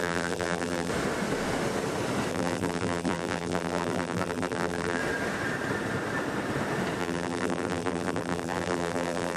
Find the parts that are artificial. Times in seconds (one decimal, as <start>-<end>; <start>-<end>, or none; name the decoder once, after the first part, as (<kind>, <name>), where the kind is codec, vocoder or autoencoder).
0.0-0.9 (vocoder, BigVGAN v2); 2.3-5.0; 7.0-9.4